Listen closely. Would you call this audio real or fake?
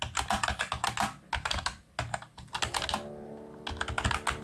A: real